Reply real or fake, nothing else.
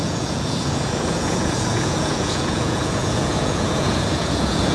fake